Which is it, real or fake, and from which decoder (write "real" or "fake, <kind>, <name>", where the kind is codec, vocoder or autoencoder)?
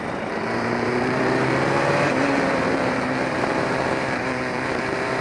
fake, vocoder, BigVGAN v2